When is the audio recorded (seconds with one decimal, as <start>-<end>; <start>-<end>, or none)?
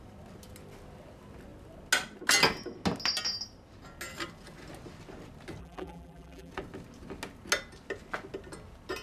0.0-5.6; 6.5-9.0